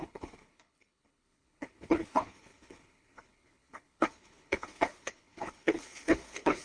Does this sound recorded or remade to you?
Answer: remade